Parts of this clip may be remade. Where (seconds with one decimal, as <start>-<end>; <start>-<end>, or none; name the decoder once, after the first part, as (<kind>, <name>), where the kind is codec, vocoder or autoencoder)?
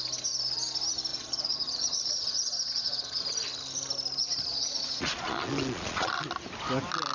1.1-3.3 (vocoder, Vocos); 4.5-6.1